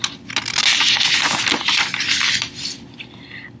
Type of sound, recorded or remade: recorded